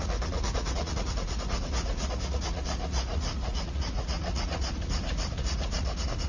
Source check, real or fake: fake